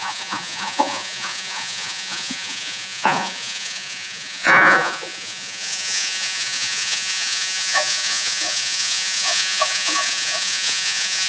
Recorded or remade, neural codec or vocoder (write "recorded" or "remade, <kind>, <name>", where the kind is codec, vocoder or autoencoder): remade, vocoder, Vocos